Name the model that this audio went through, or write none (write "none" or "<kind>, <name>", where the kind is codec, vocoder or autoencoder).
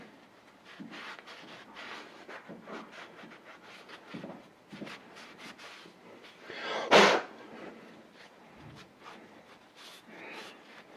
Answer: none